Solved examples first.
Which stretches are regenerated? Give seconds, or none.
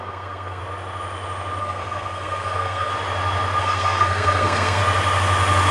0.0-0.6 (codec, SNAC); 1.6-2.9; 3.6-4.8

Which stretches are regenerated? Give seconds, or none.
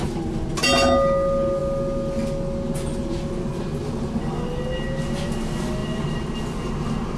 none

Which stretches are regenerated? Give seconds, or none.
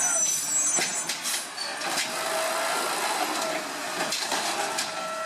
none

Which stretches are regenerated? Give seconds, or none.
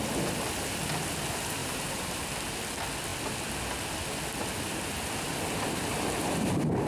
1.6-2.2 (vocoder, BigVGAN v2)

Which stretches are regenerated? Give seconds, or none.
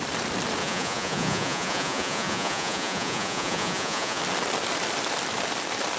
0.6-4.2 (vocoder, Vocos)